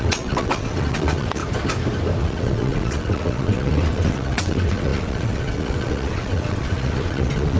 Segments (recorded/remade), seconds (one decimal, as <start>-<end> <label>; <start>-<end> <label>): 0.0-1.4 remade; 1.4-2.2 recorded; 2.2-7.6 remade